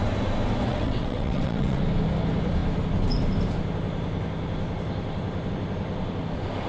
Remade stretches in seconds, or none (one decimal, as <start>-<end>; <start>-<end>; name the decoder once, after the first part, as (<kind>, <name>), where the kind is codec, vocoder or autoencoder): 0.7-1.8 (vocoder, WaveNeXt)